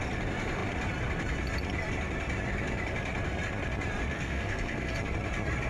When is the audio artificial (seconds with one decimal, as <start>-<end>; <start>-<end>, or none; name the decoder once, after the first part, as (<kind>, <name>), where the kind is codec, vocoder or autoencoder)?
4.1-4.9 (codec, SNAC)